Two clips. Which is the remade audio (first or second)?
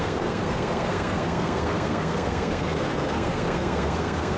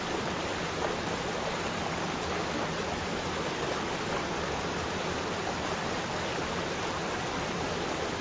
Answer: first